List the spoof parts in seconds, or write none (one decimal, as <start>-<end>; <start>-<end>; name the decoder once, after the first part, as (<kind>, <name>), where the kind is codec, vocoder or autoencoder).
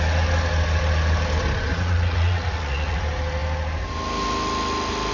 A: 1.7-3.0 (vocoder, Vocos)